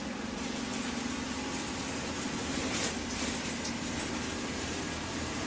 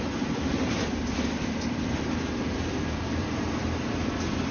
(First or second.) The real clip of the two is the first